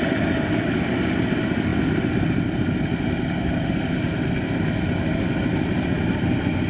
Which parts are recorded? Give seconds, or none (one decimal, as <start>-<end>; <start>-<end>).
0.0-6.7